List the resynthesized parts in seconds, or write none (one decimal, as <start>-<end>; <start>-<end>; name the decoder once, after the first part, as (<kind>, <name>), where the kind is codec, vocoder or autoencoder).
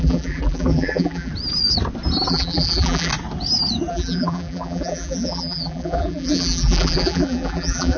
0.0-1.3 (vocoder, BigVGAN v2); 2.3-3.1; 3.9-8.0